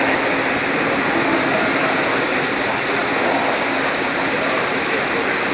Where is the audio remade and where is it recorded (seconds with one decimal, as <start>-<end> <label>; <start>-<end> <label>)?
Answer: 0.0-3.0 recorded; 3.0-3.6 remade; 3.6-5.5 recorded